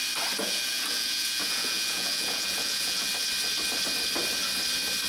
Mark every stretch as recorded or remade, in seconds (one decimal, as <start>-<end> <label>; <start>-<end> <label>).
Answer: 0.0-0.4 recorded; 0.4-3.1 remade; 3.1-5.1 recorded